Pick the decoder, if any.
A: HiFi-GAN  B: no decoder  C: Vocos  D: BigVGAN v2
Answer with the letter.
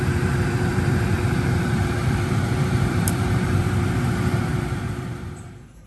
D